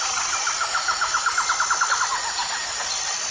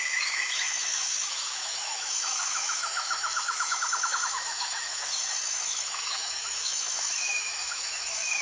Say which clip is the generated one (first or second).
second